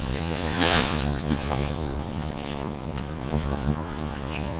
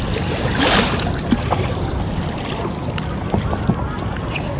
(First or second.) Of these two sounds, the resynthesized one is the first